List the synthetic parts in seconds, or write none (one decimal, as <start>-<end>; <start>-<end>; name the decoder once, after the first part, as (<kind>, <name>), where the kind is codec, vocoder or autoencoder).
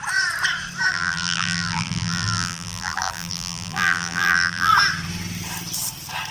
0.9-4.7 (vocoder, BigVGAN v2)